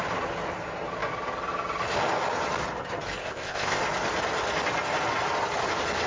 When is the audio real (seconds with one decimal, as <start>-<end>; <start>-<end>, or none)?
0.0-3.2; 3.8-6.1